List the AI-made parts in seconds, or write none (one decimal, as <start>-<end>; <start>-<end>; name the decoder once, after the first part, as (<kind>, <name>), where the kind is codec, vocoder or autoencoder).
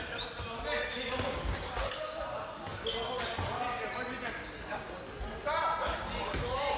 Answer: 0.8-1.7 (codec, DAC)